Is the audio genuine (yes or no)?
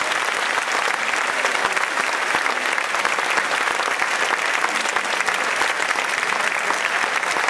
yes